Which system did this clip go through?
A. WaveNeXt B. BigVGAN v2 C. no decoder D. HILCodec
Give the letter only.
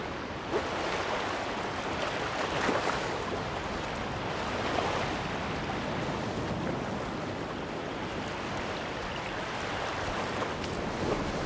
C